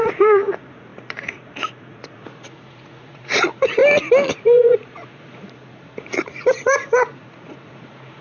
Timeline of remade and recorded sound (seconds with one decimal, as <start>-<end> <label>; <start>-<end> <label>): 0.0-3.8 remade; 3.8-4.3 recorded; 4.3-8.2 remade